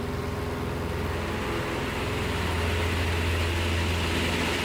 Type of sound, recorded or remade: recorded